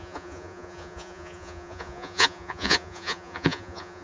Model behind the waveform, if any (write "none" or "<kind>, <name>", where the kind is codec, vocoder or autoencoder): vocoder, Vocos